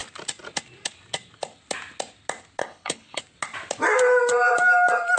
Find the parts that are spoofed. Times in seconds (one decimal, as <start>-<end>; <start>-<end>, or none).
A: 2.6-3.2